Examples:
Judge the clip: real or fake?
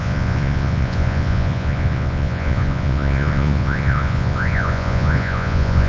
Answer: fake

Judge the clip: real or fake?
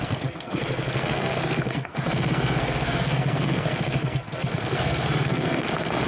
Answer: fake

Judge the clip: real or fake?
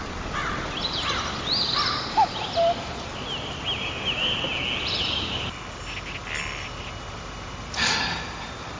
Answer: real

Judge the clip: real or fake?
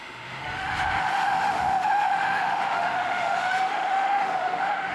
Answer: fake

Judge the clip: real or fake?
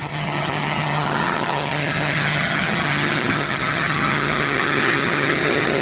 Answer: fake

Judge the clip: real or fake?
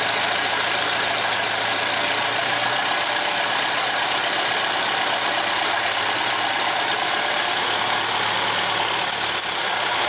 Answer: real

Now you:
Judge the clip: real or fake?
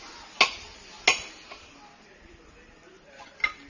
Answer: real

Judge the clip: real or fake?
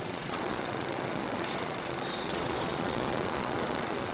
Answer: fake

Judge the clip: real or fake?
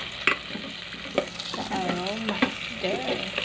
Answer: real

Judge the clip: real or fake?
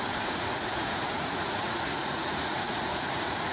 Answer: fake